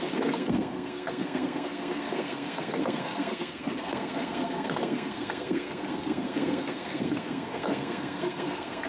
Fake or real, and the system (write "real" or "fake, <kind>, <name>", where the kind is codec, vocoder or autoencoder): fake, codec, SNAC